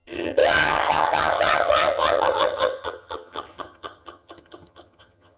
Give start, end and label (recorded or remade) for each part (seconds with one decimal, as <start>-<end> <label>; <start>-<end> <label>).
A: 0.0-5.4 remade